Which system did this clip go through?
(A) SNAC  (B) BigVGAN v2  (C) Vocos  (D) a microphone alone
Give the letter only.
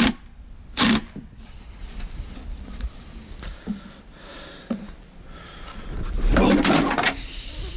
D